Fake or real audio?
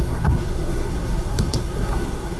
fake